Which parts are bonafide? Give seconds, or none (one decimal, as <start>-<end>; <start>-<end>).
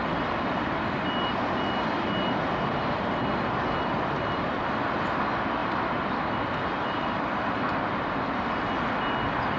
0.0-3.9; 4.6-5.6; 7.6-9.6